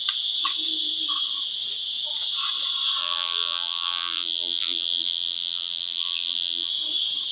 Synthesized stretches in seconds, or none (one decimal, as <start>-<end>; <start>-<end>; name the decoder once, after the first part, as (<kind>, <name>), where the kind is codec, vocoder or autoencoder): 3.0-6.7 (vocoder, BigVGAN v2)